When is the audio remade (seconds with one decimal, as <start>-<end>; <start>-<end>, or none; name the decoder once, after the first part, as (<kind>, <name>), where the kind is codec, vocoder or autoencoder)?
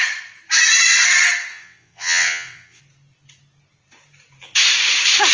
1.5-2.8 (vocoder, WaveNeXt)